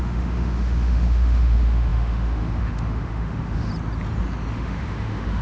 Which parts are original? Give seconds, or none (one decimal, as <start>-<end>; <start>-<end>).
3.7-4.5